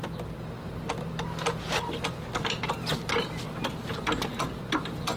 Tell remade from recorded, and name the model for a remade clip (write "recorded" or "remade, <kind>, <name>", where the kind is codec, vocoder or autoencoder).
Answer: recorded